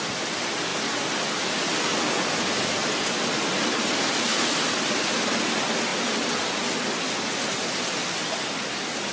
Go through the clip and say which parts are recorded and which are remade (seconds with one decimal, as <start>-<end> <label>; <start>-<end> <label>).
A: 0.0-0.7 remade; 0.7-1.5 recorded; 1.5-1.9 remade; 1.9-3.0 recorded; 3.0-5.9 remade; 5.9-7.4 recorded; 7.4-9.1 remade